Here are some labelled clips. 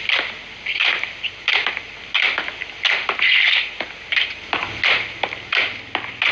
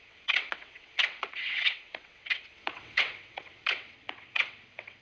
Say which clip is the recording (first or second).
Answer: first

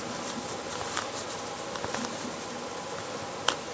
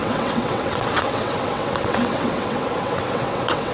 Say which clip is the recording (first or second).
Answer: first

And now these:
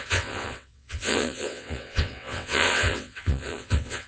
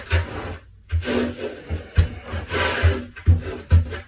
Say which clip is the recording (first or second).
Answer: second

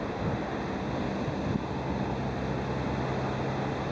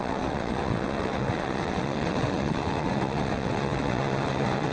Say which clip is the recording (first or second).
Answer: first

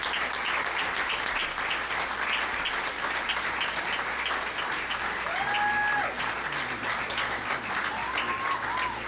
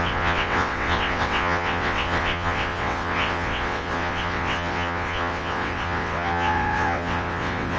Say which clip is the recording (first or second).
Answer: first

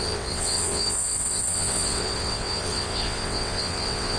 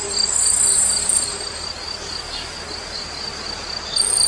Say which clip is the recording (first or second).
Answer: second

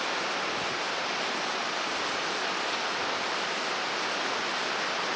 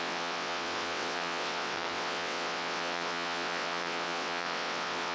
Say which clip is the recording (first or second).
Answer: first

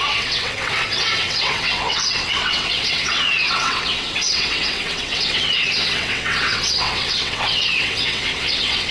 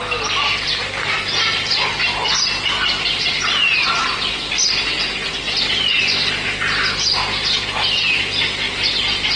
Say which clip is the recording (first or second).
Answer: second